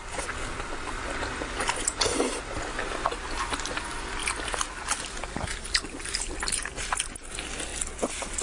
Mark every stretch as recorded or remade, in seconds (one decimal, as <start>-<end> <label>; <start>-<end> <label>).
0.0-8.4 recorded